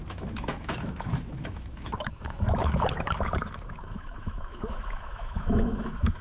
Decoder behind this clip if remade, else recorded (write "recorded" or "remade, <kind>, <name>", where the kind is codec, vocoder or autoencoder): remade, autoencoder, DAC-VAE